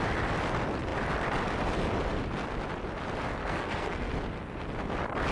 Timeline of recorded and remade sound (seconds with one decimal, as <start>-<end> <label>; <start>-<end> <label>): 0.0-3.4 recorded; 3.4-4.1 remade; 4.1-5.3 recorded